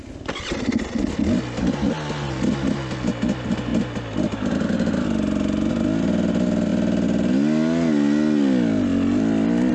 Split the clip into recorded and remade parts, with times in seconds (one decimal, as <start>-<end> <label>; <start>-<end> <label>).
0.0-9.7 recorded